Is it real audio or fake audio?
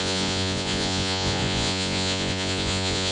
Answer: fake